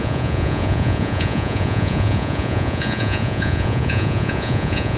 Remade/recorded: remade